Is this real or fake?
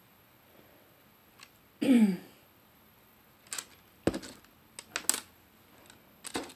real